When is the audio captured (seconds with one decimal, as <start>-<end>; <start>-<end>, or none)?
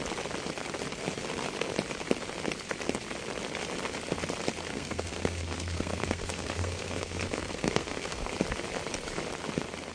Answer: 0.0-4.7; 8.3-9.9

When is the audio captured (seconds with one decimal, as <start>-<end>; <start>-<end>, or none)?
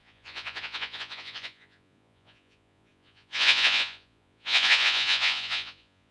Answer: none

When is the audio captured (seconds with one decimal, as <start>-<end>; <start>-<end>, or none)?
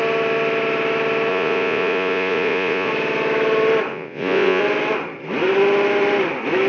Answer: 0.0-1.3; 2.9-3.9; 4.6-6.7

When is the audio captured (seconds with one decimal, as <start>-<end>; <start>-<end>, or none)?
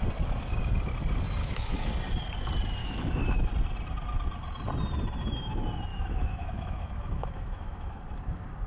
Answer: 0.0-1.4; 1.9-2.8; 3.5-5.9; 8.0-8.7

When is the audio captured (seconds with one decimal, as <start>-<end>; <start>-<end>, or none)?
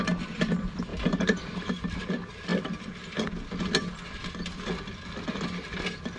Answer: 0.0-0.9; 2.0-6.2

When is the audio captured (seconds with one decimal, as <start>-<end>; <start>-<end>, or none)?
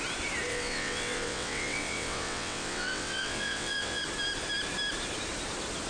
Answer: 0.0-0.5; 4.0-5.9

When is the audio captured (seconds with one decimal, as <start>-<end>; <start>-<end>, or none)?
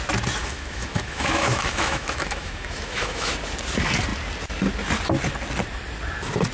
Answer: 0.0-0.4; 3.3-6.5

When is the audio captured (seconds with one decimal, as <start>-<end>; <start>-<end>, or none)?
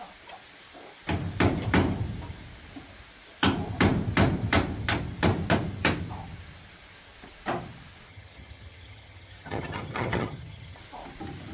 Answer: 0.0-8.1; 10.8-11.5